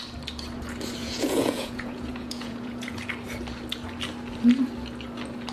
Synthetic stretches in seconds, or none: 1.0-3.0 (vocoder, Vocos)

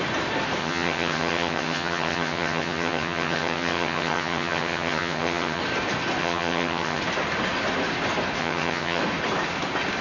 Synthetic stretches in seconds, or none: 0.6-5.6 (vocoder, HiFi-GAN); 6.2-7.0; 8.4-9.0

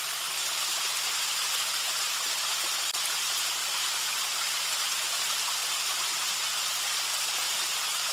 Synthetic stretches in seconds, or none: 5.6-6.3 (vocoder, BigVGAN v2)

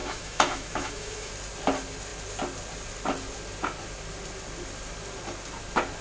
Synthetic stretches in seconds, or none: 0.0-1.3 (autoencoder, DAC-VAE)

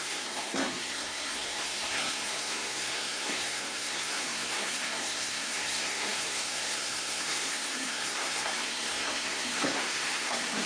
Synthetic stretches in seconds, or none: 0.0-10.7 (codec, SNAC)

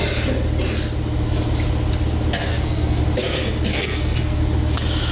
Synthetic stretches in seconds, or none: 2.5-3.0 (codec, SNAC); 3.7-4.4

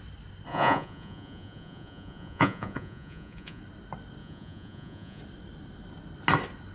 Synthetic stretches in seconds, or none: 0.5-3.6 (vocoder, Vocos); 4.2-5.2

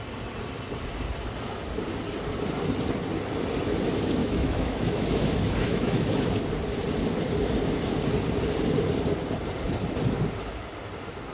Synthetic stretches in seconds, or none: 4.2-6.4 (autoencoder, DAC-VAE)